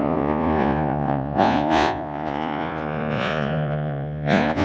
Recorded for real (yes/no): no